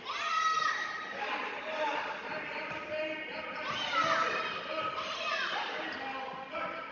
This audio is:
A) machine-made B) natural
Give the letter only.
B